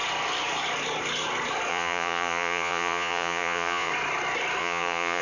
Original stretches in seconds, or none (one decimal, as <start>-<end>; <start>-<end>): 0.0-1.7; 3.9-4.6